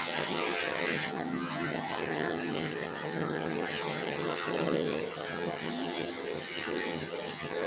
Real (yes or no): no